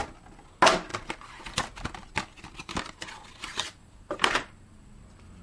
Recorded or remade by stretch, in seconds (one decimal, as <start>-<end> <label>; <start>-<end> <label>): 0.0-0.9 recorded; 0.9-1.4 remade; 1.4-2.3 recorded; 2.3-2.9 remade; 2.9-3.5 recorded; 3.5-4.8 remade; 4.8-5.4 recorded